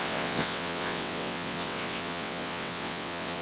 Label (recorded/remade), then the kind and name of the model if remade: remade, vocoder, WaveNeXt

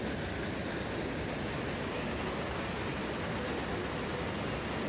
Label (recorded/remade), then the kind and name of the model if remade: recorded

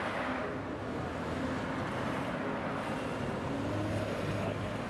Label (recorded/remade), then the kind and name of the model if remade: recorded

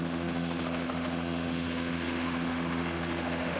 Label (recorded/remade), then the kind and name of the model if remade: remade, autoencoder, DAC-VAE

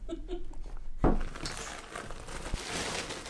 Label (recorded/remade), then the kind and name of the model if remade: recorded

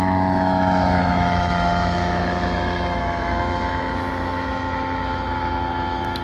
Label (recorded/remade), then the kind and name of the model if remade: remade, autoencoder, DAC-VAE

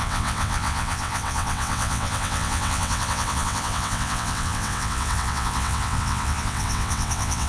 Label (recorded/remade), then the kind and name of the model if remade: remade, vocoder, WaveNeXt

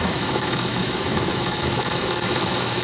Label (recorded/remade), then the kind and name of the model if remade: remade, autoencoder, DAC-VAE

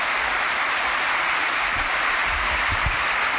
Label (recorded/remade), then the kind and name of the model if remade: remade, vocoder, BigVGAN v2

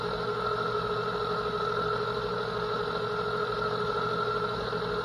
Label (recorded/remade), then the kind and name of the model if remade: recorded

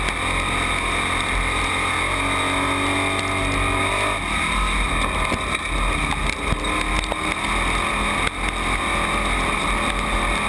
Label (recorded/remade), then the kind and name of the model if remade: recorded